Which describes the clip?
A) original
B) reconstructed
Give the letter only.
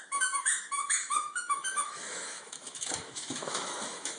B